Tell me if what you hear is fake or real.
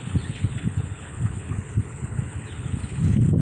fake